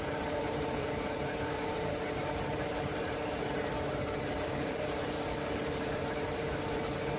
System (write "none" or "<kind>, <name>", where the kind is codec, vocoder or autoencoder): vocoder, BigVGAN v2